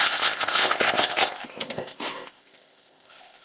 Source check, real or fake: fake